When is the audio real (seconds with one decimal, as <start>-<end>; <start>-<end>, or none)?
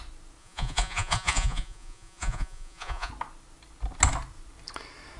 0.0-0.4; 3.1-5.2